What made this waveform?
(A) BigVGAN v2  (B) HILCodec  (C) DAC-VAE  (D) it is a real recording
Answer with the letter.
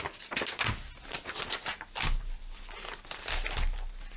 D